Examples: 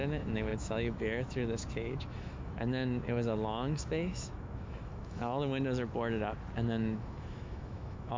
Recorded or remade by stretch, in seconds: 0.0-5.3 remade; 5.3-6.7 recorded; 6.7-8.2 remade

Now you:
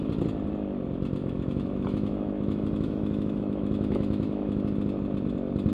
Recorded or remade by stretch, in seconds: 0.0-1.2 recorded; 1.2-4.6 remade; 4.6-5.7 recorded

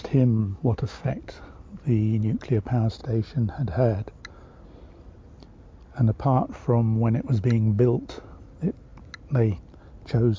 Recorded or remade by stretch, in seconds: 0.0-0.4 recorded; 0.4-1.1 remade; 1.1-10.4 recorded

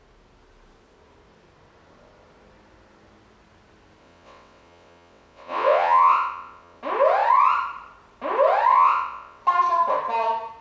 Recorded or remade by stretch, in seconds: 0.0-4.0 recorded; 4.0-6.8 remade; 6.8-8.7 recorded; 8.7-9.4 remade; 9.4-10.6 recorded

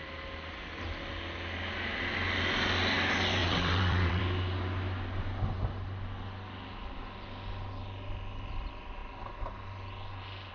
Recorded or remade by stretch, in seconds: 0.0-3.4 recorded; 3.4-4.2 remade; 4.2-10.5 recorded

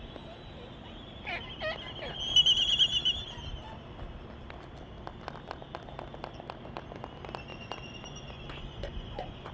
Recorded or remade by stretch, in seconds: 0.0-7.5 recorded; 7.5-9.5 remade

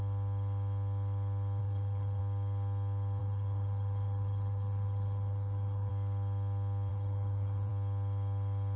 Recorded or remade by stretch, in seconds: 0.0-1.6 recorded; 1.6-2.2 remade; 2.2-3.2 recorded; 3.2-5.9 remade; 5.9-6.9 recorded; 6.9-7.7 remade; 7.7-8.8 recorded

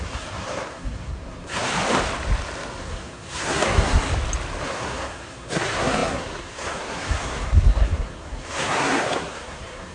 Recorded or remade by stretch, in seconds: 0.0-1.7 remade; 1.7-2.8 recorded; 2.8-4.1 remade; 4.1-4.6 recorded; 4.6-9.9 remade